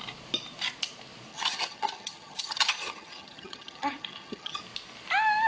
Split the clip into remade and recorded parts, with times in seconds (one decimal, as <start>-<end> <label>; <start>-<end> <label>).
0.0-1.3 recorded; 1.3-4.6 remade; 4.6-5.5 recorded